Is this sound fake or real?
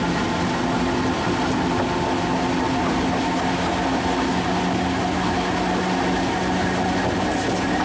real